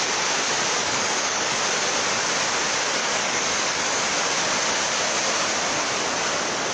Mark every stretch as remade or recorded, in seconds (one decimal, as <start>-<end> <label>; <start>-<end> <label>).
0.0-0.8 recorded; 0.8-1.6 remade; 1.6-3.0 recorded; 3.0-4.0 remade; 4.0-6.7 recorded